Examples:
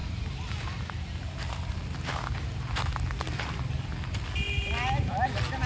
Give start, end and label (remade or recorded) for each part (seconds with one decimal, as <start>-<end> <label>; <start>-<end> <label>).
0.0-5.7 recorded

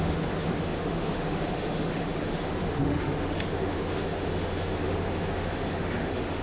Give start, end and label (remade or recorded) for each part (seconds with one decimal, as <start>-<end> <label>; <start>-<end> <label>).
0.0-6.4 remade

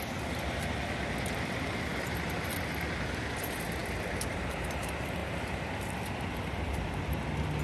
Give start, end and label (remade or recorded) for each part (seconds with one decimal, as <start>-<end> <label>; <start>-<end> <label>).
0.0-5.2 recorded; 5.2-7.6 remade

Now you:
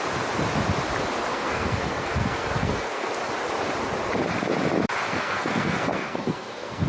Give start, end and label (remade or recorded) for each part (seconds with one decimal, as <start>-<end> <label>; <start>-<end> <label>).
0.0-1.3 recorded; 1.3-3.1 remade; 3.1-5.0 recorded; 5.0-6.9 remade

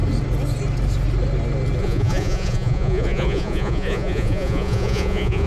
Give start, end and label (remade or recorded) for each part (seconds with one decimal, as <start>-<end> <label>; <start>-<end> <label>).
0.0-1.8 recorded; 1.8-5.5 remade